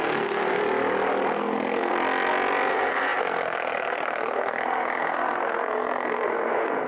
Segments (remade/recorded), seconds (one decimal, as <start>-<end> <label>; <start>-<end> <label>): 0.0-0.6 remade; 0.6-1.3 recorded; 1.3-1.9 remade; 1.9-2.7 recorded; 2.7-6.9 remade